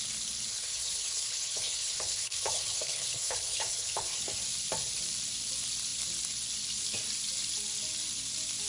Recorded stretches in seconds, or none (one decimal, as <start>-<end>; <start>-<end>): 0.0-0.5; 4.2-8.7